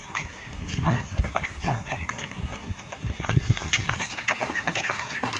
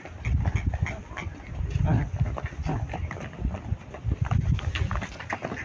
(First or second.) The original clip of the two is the second